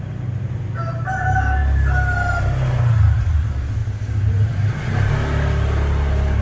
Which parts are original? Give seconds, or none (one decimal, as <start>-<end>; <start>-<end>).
0.0-6.4